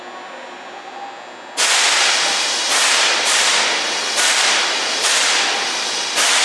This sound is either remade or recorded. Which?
recorded